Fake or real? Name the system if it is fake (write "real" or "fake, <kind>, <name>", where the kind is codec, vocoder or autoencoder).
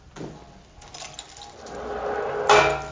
real